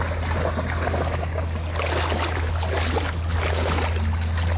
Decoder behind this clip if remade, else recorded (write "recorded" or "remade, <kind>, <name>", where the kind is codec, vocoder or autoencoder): recorded